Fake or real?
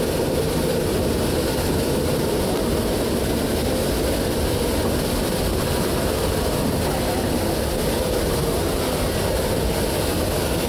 real